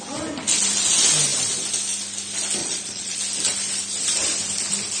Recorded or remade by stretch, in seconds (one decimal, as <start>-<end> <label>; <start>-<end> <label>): 0.0-2.6 recorded; 2.6-3.2 remade; 3.2-5.0 recorded